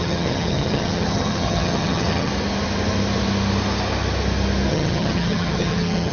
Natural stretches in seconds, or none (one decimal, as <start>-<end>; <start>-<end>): 2.3-4.7